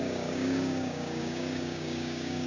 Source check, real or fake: fake